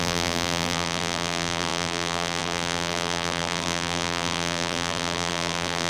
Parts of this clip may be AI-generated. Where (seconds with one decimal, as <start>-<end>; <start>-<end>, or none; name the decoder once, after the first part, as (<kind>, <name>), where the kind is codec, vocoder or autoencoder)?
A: 0.0-5.9 (vocoder, BigVGAN v2)